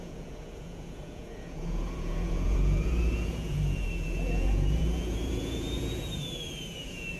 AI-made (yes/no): yes